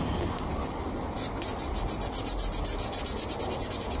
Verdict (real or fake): real